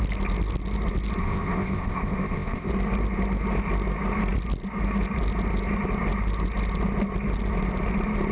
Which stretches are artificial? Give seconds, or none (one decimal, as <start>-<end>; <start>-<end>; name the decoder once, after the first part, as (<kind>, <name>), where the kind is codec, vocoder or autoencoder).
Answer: 1.2-2.7 (codec, ZipCodec)